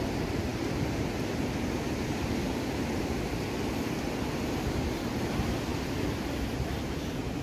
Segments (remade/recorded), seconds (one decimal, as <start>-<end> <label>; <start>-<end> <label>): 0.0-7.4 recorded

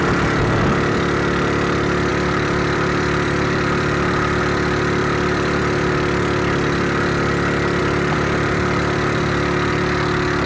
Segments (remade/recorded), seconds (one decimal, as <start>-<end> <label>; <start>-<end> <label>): 0.0-2.1 recorded; 2.1-4.4 remade; 4.4-5.0 recorded; 5.0-5.9 remade; 5.9-7.8 recorded; 7.8-9.7 remade; 9.7-10.5 recorded

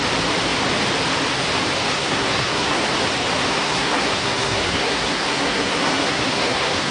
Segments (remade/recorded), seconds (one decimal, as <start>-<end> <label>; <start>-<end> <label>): 0.0-1.9 recorded; 1.9-2.8 remade; 2.8-3.5 recorded; 3.5-6.9 remade